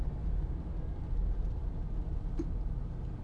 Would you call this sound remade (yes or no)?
no